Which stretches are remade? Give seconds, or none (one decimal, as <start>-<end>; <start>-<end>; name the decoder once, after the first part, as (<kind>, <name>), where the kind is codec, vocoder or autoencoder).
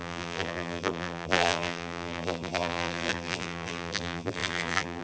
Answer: 0.0-5.0 (vocoder, BigVGAN v2)